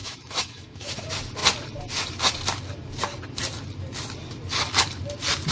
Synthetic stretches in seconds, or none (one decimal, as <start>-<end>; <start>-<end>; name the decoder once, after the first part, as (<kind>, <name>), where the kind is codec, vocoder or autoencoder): 0.0-0.9 (autoencoder, DAC-VAE)